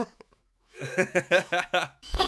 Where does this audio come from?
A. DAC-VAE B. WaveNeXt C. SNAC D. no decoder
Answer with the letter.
A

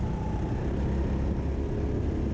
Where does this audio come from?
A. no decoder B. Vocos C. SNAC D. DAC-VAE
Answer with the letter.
A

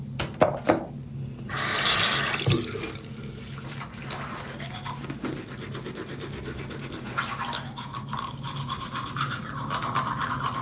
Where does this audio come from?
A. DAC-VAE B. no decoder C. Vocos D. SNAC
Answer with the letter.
B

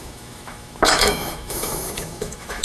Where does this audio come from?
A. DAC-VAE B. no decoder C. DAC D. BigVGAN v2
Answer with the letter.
A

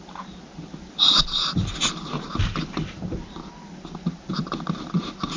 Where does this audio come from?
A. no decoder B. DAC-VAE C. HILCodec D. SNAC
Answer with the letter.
A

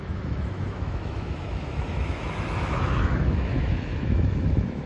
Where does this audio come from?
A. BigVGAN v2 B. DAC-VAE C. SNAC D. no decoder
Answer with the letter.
B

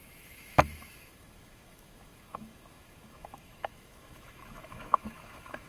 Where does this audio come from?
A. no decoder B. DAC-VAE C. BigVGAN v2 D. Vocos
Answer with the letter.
B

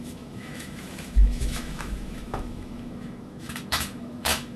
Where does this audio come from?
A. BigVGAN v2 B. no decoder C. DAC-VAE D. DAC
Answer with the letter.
C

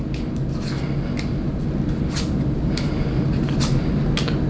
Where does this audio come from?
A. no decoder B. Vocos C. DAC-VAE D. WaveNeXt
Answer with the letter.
A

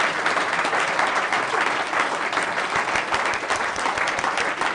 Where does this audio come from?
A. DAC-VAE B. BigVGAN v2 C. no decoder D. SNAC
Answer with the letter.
C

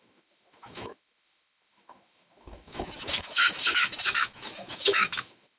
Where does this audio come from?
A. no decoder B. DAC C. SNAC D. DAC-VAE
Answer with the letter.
D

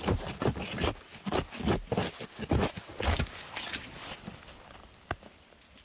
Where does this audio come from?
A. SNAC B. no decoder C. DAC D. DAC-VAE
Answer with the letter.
B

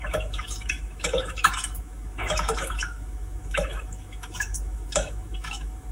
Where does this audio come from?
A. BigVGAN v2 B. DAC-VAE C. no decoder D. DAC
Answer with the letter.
B